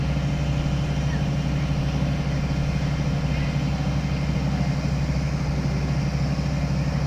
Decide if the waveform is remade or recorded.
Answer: recorded